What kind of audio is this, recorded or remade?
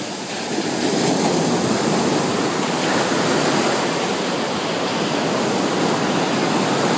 recorded